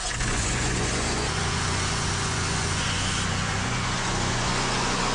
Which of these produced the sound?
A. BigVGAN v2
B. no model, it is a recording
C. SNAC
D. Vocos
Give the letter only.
D